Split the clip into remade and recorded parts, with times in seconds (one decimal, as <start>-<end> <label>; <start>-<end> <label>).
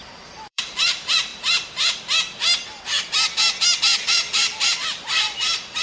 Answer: 0.0-1.3 remade; 1.3-3.8 recorded; 3.8-5.8 remade